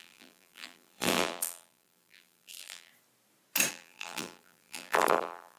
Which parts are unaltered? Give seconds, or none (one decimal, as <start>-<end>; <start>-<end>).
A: 2.9-3.7